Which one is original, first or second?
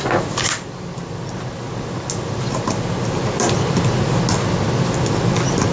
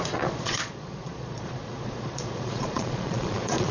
first